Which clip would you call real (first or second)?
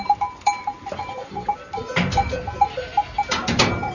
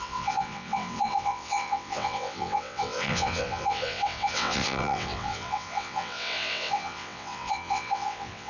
first